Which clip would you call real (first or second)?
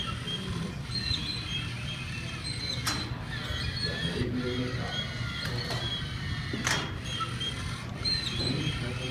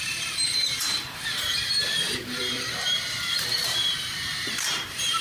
first